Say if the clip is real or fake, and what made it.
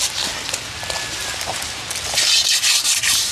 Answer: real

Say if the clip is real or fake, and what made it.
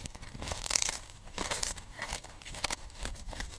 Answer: fake, codec, DAC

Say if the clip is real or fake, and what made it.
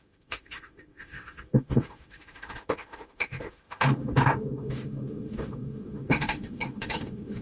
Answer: fake, autoencoder, DAC-VAE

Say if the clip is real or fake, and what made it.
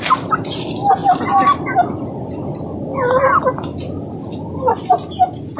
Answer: real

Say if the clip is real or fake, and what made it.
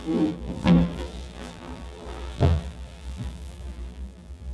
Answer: fake, vocoder, BigVGAN v2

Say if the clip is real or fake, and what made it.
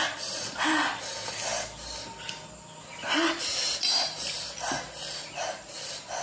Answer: real